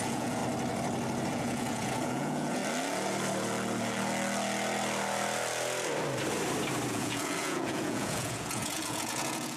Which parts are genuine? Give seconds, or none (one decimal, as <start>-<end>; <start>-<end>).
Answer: 0.4-1.3; 2.6-6.9